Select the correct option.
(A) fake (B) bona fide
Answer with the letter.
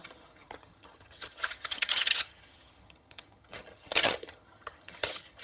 A